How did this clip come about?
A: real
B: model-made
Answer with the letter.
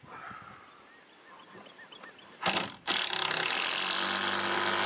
A